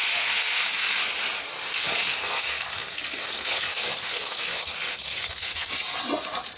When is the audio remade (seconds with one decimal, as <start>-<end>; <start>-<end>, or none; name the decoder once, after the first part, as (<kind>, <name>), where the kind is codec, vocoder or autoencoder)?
0.0-1.0 (codec, SNAC); 1.7-5.7